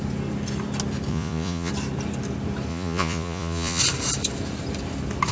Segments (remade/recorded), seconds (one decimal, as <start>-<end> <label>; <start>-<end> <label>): 0.0-1.1 recorded; 1.1-1.7 remade; 1.7-2.7 recorded; 2.7-3.8 remade; 3.8-5.3 recorded